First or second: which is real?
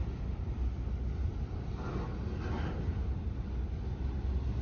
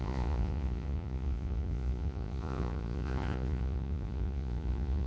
first